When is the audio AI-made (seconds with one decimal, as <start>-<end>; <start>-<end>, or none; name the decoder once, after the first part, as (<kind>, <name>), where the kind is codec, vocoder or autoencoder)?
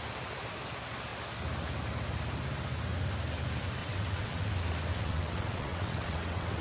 3.8-4.5 (vocoder, WaveNeXt); 4.9-6.6